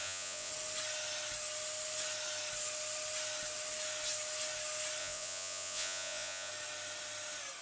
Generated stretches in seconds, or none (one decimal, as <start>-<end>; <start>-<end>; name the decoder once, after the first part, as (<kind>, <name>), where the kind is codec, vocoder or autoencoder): 0.0-0.5 (vocoder, Vocos); 5.0-6.5